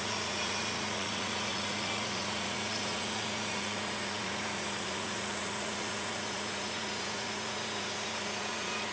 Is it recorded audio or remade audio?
remade